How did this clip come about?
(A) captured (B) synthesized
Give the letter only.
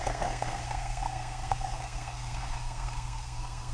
B